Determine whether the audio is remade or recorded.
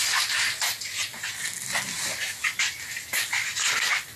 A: recorded